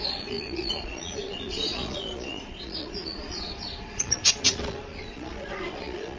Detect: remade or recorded remade